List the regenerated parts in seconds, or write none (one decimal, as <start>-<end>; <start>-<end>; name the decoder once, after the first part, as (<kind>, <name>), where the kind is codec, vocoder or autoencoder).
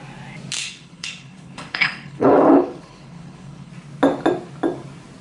0.6-3.7 (codec, HILCodec)